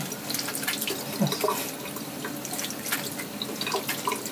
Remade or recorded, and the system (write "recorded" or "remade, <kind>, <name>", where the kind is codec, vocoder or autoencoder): recorded